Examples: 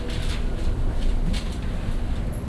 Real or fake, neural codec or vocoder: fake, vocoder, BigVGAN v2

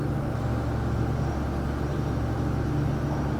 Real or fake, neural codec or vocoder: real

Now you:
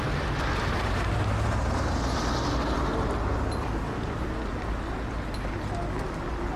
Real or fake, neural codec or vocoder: real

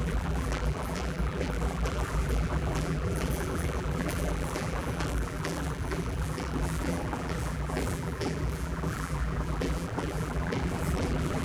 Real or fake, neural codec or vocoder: fake, vocoder, BigVGAN v2